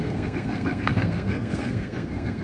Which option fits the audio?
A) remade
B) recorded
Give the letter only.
A